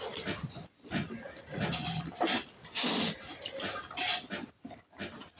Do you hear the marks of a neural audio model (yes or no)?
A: no